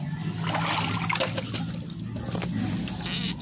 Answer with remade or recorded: recorded